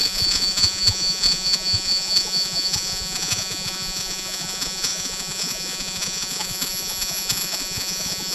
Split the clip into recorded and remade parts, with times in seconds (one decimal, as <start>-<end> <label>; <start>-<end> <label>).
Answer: 0.0-8.3 remade